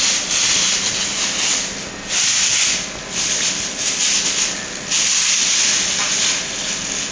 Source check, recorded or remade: recorded